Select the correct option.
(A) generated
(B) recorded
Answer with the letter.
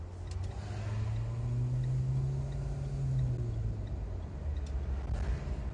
B